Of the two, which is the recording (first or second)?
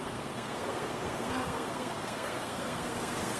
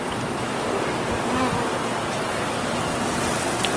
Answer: second